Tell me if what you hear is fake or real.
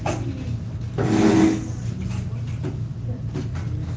real